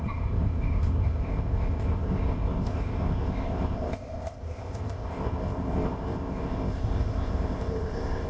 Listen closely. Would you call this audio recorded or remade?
remade